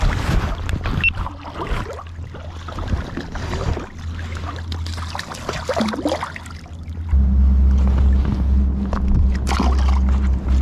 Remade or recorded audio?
recorded